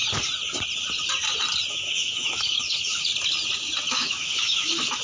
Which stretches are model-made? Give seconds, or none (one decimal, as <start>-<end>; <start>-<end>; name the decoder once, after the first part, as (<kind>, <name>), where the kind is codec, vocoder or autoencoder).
1.7-3.1 (autoencoder, DAC-VAE); 3.9-5.0